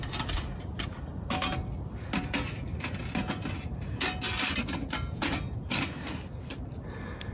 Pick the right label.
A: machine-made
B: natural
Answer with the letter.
B